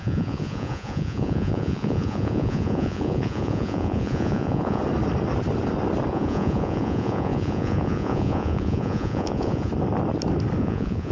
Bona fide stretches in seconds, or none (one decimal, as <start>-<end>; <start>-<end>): 4.8-6.1; 9.7-10.6